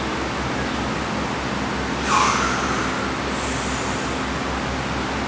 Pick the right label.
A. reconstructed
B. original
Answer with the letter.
B